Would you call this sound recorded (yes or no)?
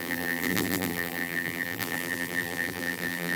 no